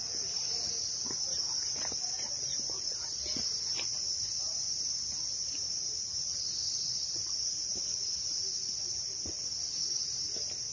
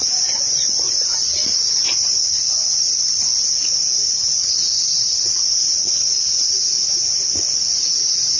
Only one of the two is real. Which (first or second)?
first